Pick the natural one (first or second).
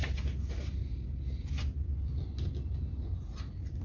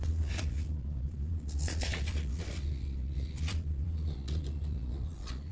first